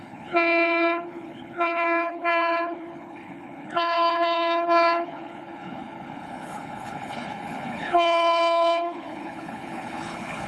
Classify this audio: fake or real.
fake